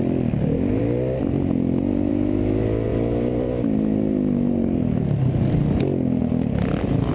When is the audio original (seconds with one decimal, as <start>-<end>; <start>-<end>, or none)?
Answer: 0.0-7.1